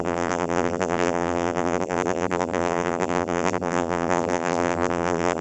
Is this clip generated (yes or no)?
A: yes